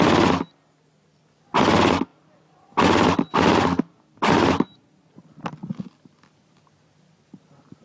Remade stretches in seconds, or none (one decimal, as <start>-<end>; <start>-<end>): none